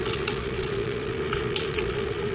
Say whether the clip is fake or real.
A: fake